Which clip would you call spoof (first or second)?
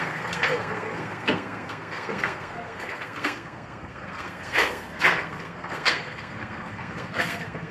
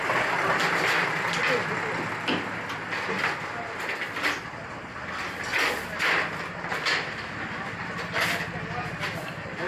first